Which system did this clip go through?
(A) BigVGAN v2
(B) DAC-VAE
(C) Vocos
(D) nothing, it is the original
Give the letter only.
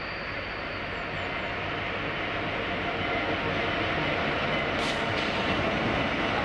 D